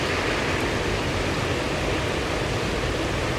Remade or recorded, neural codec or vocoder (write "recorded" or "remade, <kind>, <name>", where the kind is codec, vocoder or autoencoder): recorded